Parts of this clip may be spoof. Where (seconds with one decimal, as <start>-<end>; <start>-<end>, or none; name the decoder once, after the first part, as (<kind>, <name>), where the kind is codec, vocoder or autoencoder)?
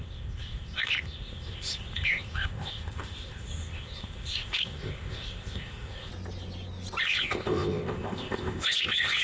0.0-6.1 (codec, ZipCodec); 7.0-9.2